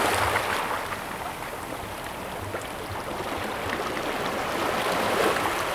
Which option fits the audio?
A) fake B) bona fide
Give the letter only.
B